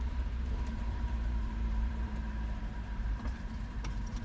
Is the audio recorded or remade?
remade